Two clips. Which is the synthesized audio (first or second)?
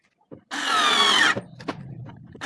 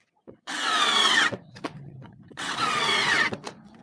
second